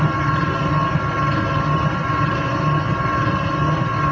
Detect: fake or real real